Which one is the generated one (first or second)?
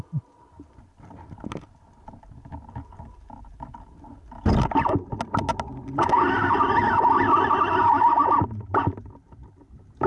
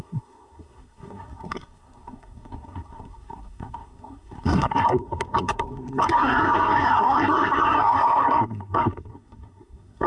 second